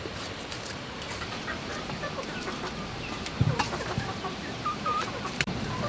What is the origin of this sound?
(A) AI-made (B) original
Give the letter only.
A